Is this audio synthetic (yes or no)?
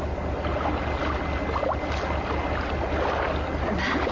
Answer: no